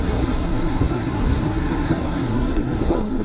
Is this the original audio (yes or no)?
no